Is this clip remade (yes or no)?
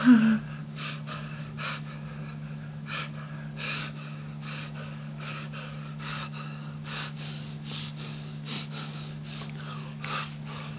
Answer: yes